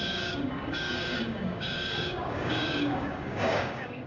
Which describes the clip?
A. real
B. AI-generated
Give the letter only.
B